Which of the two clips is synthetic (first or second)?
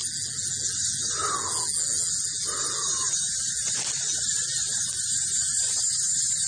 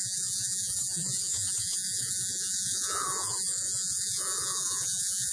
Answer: second